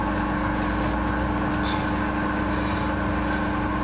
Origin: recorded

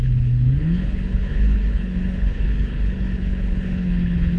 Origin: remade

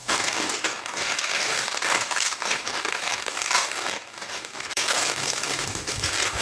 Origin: remade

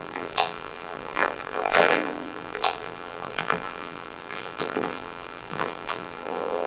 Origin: remade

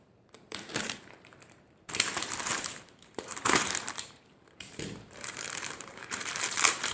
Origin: remade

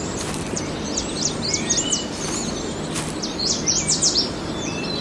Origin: recorded